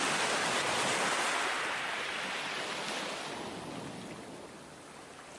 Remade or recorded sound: recorded